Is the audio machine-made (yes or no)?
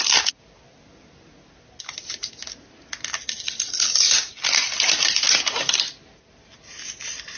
no